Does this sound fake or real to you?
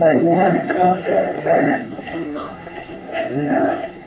fake